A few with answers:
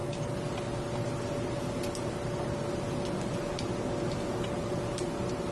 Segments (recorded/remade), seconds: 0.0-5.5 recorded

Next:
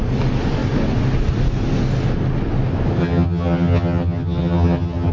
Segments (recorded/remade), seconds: 0.0-3.0 recorded; 3.0-5.1 remade

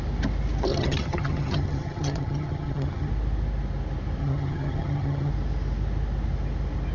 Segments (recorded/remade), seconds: 0.0-0.7 recorded; 0.7-3.1 remade; 3.1-4.2 recorded; 4.2-5.3 remade; 5.3-6.9 recorded

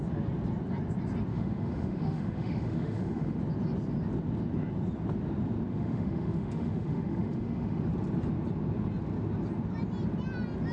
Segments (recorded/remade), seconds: 0.0-1.3 recorded; 1.3-3.4 remade; 3.4-5.7 recorded; 5.7-7.8 remade; 7.8-10.7 recorded

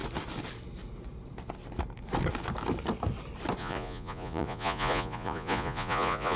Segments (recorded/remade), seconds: 0.0-3.6 recorded; 3.6-6.4 remade

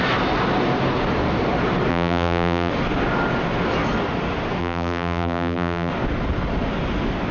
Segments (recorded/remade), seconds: 0.0-1.9 recorded; 1.9-2.7 remade; 2.7-4.6 recorded; 4.6-5.9 remade; 5.9-7.3 recorded